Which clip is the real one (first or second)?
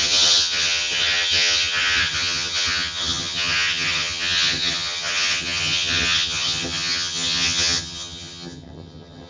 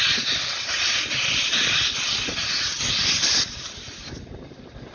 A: second